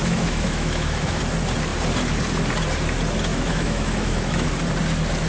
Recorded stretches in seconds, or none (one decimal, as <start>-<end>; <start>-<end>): 1.2-3.3; 4.5-5.3